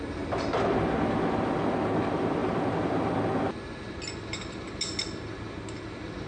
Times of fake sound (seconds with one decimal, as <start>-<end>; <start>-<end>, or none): none